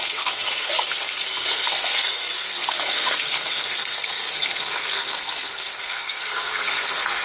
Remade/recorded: remade